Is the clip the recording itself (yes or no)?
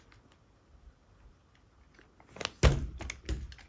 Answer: yes